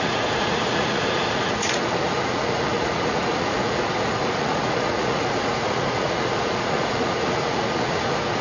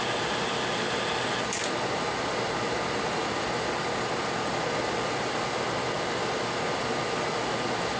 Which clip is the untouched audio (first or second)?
second